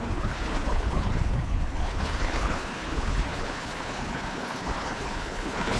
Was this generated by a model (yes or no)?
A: yes